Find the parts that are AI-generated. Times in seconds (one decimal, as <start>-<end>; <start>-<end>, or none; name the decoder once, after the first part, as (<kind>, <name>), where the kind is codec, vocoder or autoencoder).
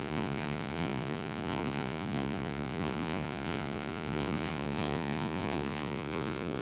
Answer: 0.0-6.6 (vocoder, Vocos)